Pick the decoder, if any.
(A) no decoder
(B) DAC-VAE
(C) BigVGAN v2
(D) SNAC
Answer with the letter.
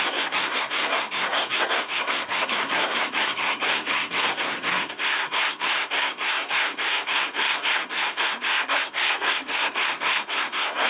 D